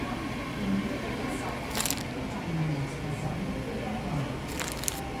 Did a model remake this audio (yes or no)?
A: no